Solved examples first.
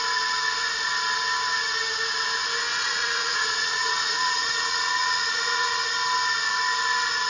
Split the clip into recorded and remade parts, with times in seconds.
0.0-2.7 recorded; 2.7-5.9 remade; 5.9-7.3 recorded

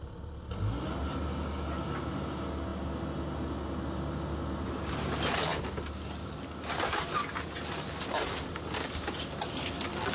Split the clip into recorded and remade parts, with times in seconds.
0.0-10.1 recorded